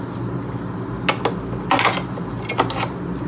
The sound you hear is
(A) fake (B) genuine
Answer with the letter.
B